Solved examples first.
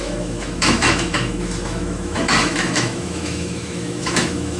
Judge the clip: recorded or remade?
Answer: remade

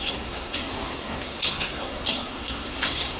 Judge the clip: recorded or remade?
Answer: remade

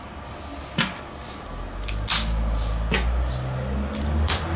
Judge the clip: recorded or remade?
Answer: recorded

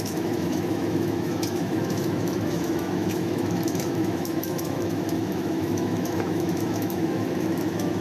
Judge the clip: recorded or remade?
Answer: remade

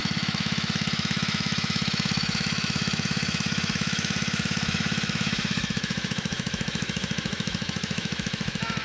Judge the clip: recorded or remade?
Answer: remade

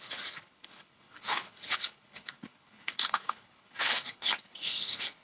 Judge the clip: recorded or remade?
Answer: remade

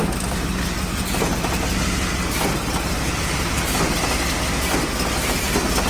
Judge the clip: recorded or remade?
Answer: recorded